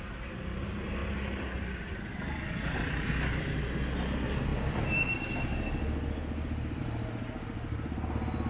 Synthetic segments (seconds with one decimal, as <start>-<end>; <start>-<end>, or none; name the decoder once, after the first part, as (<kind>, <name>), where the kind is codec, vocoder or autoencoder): none